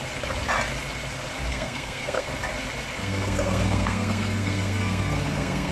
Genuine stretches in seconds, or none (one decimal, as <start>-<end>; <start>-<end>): 0.0-1.5; 2.3-3.0